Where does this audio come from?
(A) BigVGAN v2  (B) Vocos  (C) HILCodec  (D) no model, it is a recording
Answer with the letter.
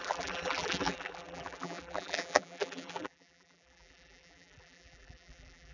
A